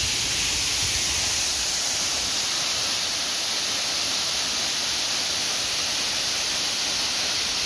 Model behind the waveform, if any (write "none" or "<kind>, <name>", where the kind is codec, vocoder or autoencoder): none